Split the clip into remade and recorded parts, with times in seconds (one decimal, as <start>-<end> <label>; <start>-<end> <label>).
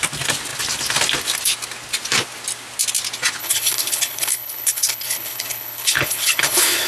0.0-3.4 recorded; 3.4-6.9 remade